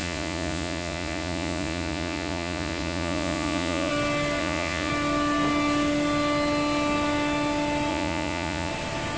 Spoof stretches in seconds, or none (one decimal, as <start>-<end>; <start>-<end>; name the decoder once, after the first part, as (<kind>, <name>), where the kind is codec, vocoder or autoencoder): 0.0-3.9 (vocoder, Vocos); 4.4-4.9; 7.9-8.7